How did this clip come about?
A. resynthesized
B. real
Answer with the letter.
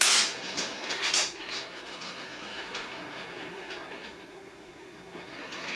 A